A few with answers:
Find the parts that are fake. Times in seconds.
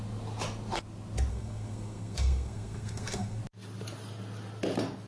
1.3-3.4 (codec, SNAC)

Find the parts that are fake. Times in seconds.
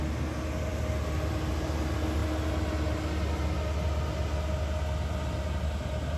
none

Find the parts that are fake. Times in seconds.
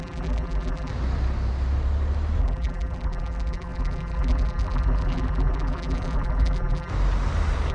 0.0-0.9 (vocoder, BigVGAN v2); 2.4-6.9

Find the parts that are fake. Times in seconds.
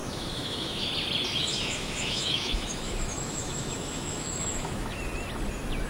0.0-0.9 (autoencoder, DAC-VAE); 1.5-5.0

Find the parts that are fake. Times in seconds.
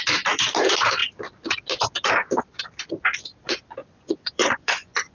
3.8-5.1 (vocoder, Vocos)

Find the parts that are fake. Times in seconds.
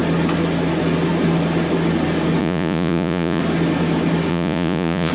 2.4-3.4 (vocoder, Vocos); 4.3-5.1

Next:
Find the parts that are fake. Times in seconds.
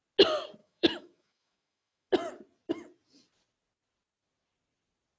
0.6-2.1 (autoencoder, DAC-VAE)